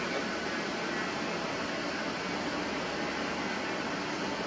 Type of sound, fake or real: real